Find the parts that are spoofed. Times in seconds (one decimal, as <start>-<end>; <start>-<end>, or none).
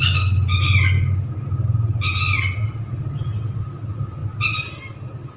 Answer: none